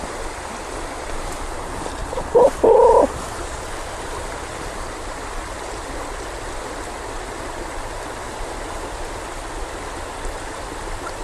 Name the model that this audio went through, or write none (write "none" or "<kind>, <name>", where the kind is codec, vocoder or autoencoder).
vocoder, BigVGAN v2